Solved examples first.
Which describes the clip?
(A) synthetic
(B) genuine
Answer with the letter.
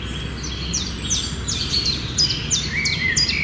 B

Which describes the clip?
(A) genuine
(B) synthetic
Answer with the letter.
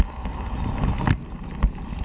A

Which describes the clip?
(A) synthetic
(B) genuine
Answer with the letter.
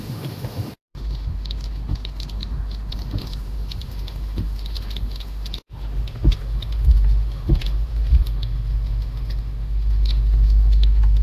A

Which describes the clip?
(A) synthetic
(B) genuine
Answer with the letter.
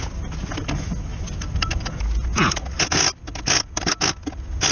B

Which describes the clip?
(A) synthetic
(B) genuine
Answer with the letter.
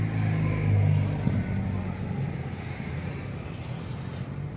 B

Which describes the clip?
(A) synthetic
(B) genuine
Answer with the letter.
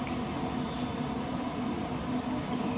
B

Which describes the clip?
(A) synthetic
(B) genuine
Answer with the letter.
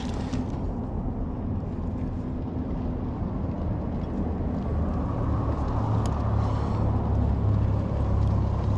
B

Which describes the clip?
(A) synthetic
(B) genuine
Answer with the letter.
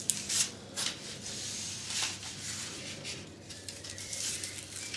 A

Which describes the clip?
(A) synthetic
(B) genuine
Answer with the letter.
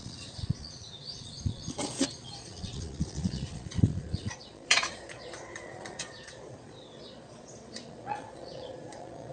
A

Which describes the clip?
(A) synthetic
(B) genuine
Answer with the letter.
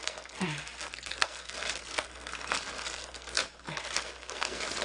A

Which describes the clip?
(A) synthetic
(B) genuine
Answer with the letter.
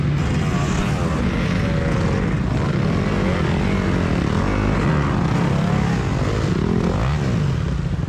B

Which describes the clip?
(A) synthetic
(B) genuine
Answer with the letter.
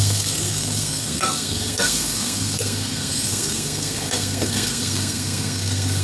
A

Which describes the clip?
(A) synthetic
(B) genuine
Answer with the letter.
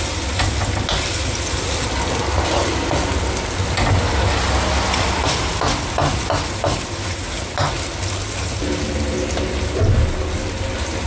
B